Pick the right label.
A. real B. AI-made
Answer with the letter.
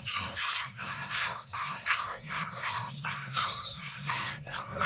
B